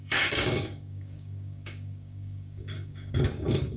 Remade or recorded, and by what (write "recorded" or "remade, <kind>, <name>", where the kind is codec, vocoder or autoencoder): remade, codec, DAC